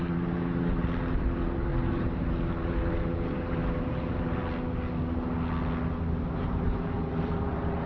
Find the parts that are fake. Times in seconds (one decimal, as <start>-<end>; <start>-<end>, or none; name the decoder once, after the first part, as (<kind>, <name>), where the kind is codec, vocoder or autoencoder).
0.0-4.4 (vocoder, BigVGAN v2); 6.3-7.9